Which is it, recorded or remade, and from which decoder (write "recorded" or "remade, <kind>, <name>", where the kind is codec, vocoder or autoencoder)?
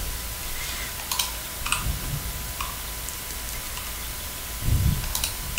recorded